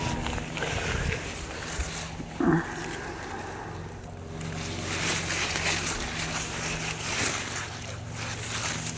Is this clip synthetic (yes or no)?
no